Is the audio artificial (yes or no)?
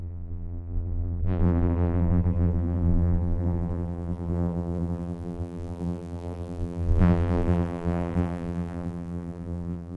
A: yes